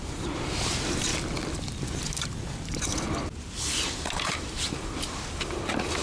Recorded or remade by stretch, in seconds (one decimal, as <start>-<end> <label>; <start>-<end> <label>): 0.0-1.1 remade; 1.1-3.8 recorded; 3.8-6.0 remade